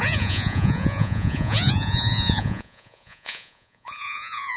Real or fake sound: fake